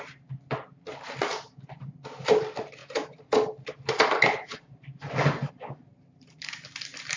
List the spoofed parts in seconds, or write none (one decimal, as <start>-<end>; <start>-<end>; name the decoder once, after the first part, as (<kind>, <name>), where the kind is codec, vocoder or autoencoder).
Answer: none